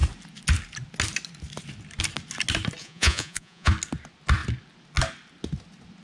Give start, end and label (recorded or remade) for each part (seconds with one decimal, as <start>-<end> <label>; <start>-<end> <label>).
0.0-2.8 recorded; 2.8-3.7 remade; 3.7-6.0 recorded